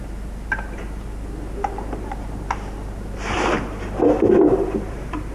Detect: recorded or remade remade